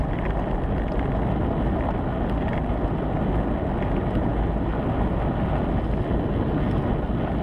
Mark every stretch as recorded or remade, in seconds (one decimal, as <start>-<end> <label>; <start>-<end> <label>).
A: 0.0-7.4 recorded